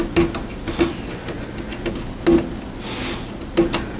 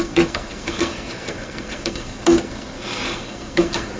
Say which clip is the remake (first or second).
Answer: second